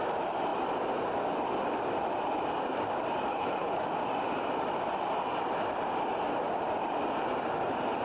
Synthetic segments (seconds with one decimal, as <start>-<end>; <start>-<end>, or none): 3.3-3.8